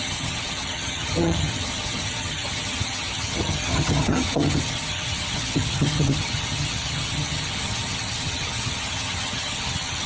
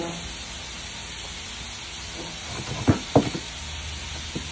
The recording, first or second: second